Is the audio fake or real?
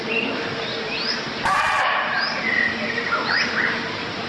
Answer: fake